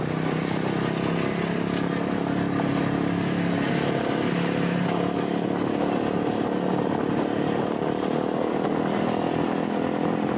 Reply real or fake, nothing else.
real